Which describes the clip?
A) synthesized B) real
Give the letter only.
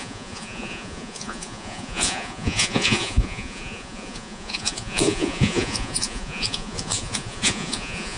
A